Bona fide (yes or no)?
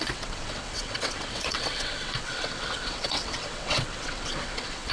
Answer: no